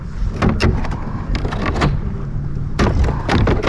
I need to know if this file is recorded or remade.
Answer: recorded